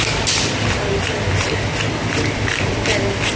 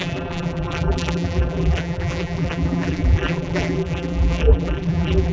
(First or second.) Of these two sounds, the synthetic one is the second